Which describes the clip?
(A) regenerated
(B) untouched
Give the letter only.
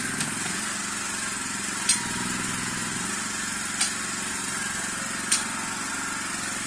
B